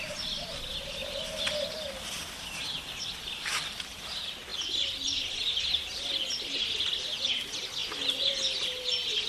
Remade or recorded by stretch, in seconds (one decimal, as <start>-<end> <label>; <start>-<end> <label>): 0.0-1.0 recorded; 1.0-3.0 remade; 3.0-9.3 recorded